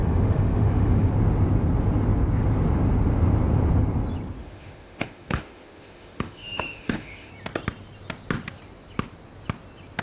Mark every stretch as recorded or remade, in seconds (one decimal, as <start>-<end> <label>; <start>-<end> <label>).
0.0-1.1 remade; 1.1-4.4 recorded; 4.4-7.3 remade; 7.3-10.0 recorded